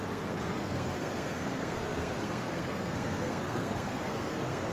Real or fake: fake